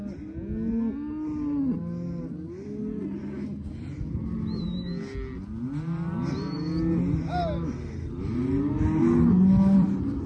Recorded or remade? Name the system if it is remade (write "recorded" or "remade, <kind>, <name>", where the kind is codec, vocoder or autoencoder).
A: recorded